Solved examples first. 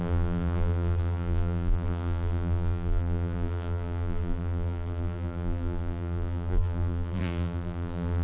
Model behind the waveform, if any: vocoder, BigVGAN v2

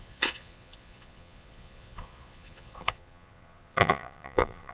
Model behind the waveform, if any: vocoder, Vocos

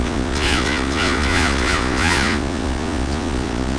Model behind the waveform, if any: vocoder, Vocos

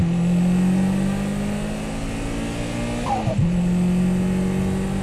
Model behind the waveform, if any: none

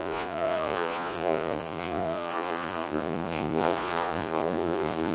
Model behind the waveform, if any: vocoder, Vocos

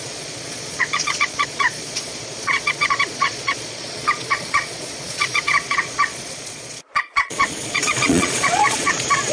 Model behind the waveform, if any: vocoder, Vocos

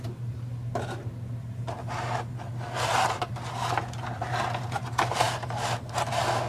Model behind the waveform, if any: none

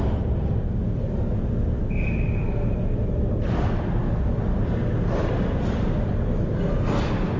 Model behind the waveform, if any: none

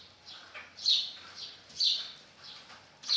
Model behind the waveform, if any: none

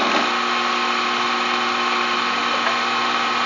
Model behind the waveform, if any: none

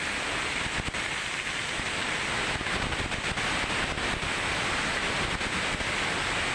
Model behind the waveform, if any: none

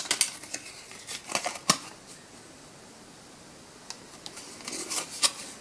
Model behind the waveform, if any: none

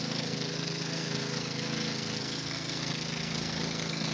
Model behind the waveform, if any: codec, SNAC